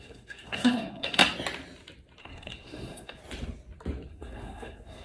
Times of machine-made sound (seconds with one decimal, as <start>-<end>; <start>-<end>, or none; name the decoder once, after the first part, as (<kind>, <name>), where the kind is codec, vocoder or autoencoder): 0.0-1.2 (codec, SNAC); 2.2-3.2; 4.1-5.0